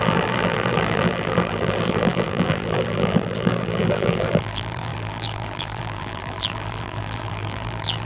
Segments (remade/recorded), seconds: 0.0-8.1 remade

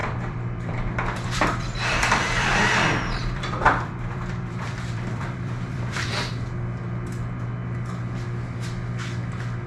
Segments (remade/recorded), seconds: 0.0-2.7 remade; 2.7-3.2 recorded; 3.2-6.3 remade; 6.3-9.7 recorded

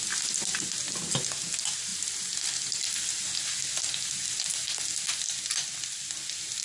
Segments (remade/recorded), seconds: 0.0-6.6 recorded

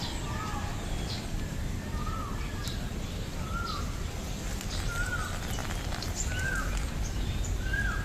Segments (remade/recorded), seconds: 0.0-2.6 recorded; 2.6-3.5 remade; 3.5-5.6 recorded; 5.6-8.0 remade